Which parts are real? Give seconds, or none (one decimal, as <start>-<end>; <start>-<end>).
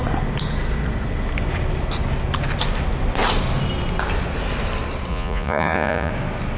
0.0-5.1; 6.1-6.6